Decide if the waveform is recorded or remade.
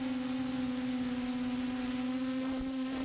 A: recorded